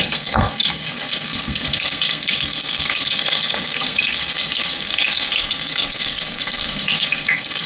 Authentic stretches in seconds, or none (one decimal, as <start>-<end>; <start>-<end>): none

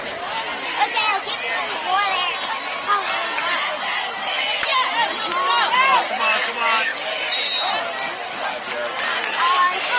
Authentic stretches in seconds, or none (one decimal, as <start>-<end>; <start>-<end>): 0.0-10.0

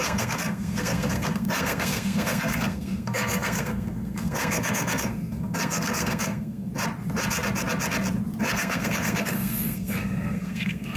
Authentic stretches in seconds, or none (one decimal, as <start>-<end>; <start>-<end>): 6.7-8.4

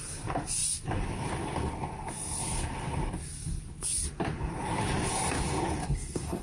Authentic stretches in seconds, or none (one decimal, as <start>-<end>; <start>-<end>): 0.0-5.8

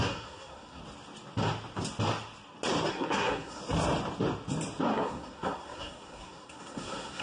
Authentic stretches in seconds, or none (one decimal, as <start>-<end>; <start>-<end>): 0.8-2.9; 3.6-4.9

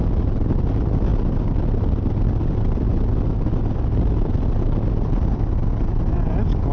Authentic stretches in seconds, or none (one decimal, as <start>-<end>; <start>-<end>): 0.0-6.7

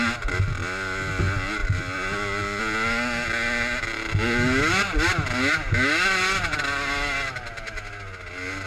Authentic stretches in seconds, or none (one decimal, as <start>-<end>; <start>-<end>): 0.0-8.7